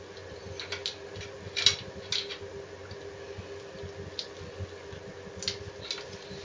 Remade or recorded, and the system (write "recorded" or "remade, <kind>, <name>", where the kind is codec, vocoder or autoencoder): recorded